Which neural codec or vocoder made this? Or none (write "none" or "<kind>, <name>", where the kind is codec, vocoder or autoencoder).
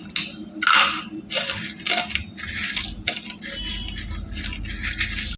none